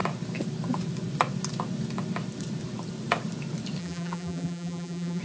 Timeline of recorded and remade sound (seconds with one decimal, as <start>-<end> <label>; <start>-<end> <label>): 0.0-3.8 recorded; 3.8-5.2 remade